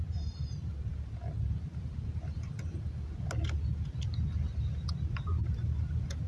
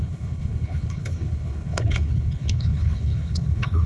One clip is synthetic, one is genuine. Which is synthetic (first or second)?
second